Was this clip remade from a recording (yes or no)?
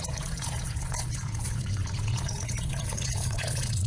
yes